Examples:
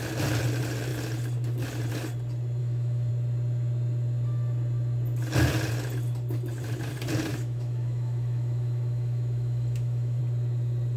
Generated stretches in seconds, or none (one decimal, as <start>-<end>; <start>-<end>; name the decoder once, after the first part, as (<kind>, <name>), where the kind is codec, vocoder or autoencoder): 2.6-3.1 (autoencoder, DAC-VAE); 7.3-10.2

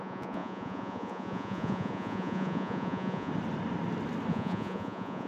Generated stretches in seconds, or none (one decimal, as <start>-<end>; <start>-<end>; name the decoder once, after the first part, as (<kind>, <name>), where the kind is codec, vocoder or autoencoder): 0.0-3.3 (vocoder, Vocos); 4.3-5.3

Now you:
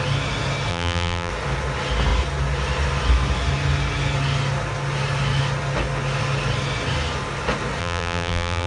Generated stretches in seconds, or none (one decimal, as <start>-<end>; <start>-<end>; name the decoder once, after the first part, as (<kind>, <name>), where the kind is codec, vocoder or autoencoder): 0.7-1.3 (vocoder, BigVGAN v2); 7.8-8.7

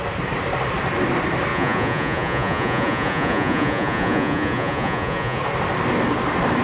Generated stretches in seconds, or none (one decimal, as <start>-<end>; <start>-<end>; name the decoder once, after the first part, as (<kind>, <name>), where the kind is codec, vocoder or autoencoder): 1.5-5.4 (vocoder, Vocos)

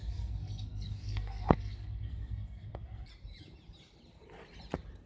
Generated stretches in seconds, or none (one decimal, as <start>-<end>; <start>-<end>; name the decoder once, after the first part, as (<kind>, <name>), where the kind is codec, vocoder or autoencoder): 0.0-3.1 (codec, SNAC)

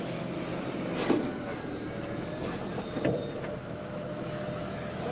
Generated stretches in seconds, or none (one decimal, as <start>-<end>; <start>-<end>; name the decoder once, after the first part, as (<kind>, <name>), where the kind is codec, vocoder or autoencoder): 0.0-0.5 (autoencoder, DAC-VAE); 3.6-5.1

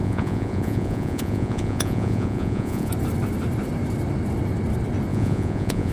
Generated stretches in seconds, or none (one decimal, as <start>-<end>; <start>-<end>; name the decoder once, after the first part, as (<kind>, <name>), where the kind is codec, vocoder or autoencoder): 0.0-2.9 (vocoder, Vocos); 5.1-5.9

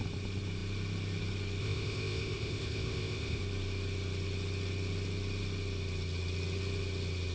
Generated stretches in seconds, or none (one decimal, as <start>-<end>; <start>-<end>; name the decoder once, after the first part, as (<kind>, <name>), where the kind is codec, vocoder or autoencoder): 1.6-3.4 (codec, ZipCodec)